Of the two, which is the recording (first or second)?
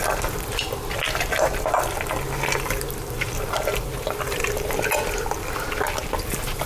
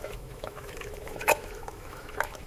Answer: first